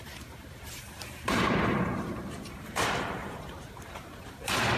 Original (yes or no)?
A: no